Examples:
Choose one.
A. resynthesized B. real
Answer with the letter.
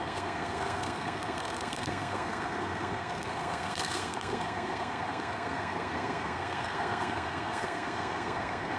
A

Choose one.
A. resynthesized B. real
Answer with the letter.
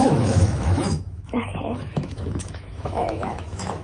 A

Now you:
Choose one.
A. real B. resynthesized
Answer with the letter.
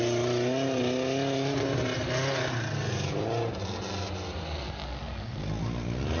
A